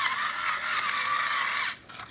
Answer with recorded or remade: recorded